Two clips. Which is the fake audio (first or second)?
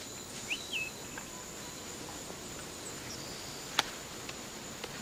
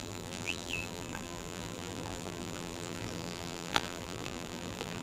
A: second